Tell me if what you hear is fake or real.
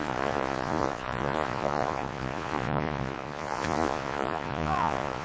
fake